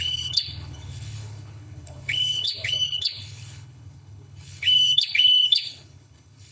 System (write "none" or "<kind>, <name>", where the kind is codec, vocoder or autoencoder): codec, HILCodec